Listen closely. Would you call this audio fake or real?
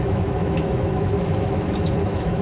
fake